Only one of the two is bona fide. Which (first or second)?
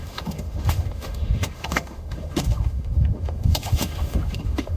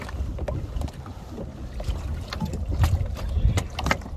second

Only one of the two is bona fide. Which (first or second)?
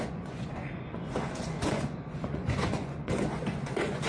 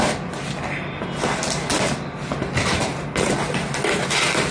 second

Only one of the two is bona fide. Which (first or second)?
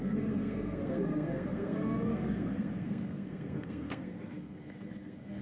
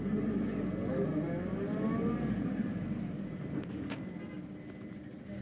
second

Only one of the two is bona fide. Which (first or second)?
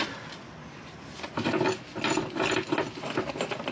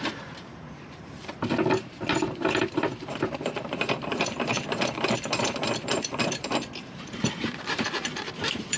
first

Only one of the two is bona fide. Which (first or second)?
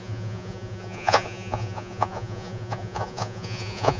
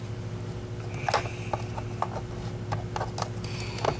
second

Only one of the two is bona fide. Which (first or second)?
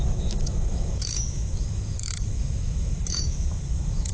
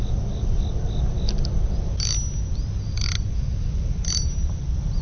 second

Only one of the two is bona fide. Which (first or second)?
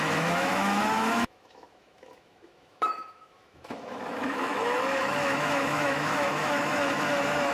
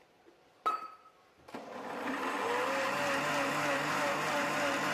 second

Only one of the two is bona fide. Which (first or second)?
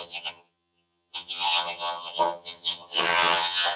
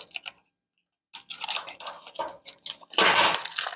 second